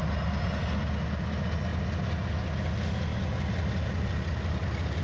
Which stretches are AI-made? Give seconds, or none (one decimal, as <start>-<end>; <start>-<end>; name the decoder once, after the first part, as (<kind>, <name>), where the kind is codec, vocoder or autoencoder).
none